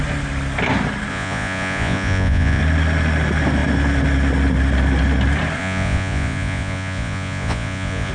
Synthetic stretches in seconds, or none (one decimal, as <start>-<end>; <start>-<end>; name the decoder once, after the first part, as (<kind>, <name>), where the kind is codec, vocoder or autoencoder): 1.1-2.6 (vocoder, Vocos); 5.6-8.1